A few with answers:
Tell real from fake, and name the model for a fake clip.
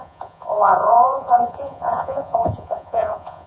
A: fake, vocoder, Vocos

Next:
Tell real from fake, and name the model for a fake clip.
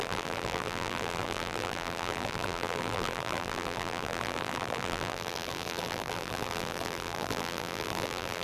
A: fake, vocoder, BigVGAN v2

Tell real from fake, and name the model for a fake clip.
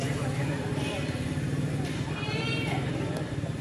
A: fake, vocoder, BigVGAN v2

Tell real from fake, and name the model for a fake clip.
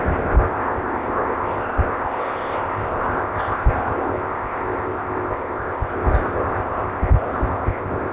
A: fake, codec, ZipCodec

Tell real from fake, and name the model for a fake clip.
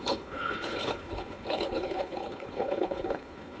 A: fake, codec, HILCodec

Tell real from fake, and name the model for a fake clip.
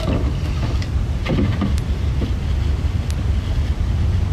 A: real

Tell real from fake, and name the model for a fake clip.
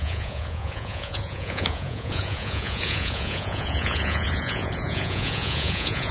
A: fake, vocoder, Vocos